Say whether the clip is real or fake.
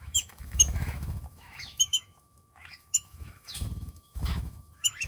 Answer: fake